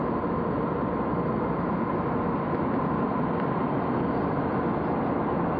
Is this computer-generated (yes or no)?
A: no